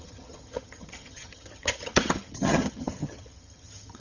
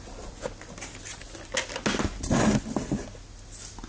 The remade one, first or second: first